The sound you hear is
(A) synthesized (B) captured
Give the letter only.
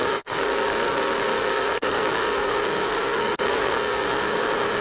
A